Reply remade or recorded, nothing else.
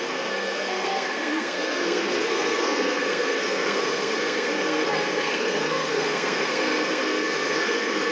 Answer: remade